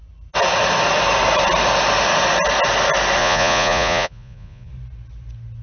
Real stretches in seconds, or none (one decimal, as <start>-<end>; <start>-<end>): 0.0-3.2; 4.7-5.6